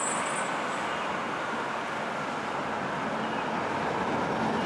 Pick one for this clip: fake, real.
real